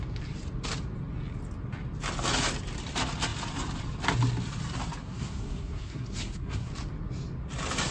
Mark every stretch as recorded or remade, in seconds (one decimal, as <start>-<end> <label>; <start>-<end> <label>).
0.0-5.0 recorded; 5.0-6.7 remade; 6.7-7.9 recorded